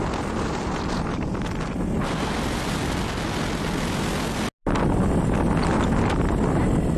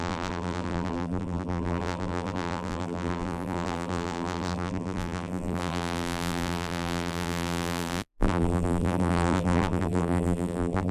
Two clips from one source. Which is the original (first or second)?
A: first